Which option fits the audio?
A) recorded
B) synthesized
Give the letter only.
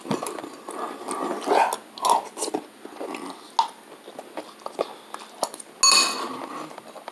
A